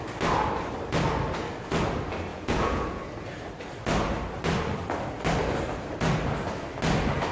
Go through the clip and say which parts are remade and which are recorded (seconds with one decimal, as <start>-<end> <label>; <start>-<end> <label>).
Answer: 0.0-2.3 recorded; 2.3-3.0 remade; 3.0-7.3 recorded